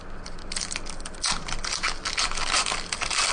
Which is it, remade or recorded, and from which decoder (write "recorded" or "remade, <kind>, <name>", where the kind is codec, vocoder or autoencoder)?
recorded